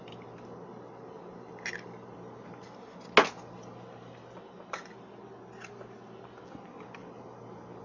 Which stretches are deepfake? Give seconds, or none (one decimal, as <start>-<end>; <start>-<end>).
7.0-7.8